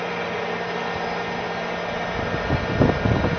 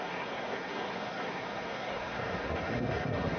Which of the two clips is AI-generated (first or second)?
second